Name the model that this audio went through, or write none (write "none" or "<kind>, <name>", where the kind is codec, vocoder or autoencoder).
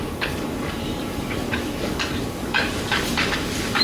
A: codec, DAC